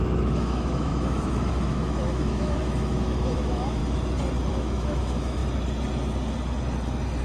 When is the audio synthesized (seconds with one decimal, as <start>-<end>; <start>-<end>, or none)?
0.0-3.8; 4.5-5.4